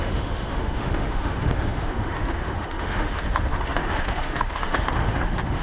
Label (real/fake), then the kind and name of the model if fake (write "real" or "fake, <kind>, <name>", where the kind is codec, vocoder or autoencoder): fake, autoencoder, DAC-VAE